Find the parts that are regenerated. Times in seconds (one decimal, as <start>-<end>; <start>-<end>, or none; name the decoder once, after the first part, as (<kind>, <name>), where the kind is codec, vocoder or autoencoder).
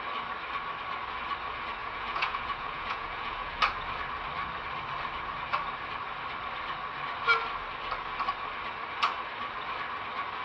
1.8-3.6 (vocoder, Vocos)